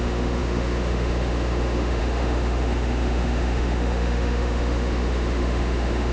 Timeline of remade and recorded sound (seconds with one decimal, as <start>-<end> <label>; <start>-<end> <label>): 0.0-6.1 remade